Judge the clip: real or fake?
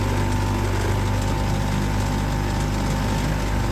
real